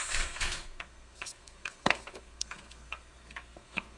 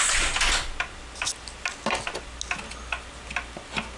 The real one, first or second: second